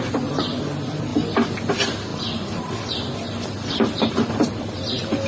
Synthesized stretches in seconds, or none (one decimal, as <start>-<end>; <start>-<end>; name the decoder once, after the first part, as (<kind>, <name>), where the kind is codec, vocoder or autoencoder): 0.0-1.1 (vocoder, BigVGAN v2); 1.7-5.3